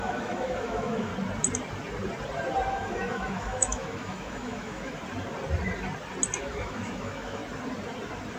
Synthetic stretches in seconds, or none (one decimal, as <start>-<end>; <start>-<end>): 0.0-1.1; 2.7-5.0; 6.4-7.4